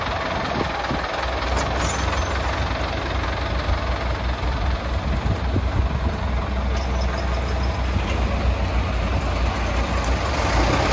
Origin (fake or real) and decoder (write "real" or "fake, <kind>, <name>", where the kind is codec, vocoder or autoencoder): real